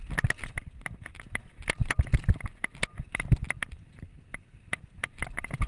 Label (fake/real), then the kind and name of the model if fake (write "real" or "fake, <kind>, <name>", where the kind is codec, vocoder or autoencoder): real